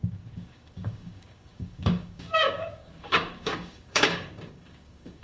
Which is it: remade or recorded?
remade